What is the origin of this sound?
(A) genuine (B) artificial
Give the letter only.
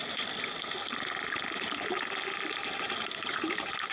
A